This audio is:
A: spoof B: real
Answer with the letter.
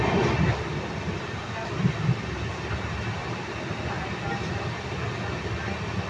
B